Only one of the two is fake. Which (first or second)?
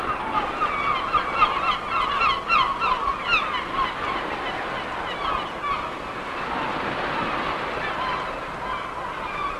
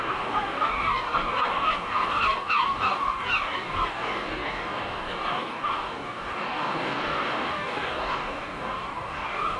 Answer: second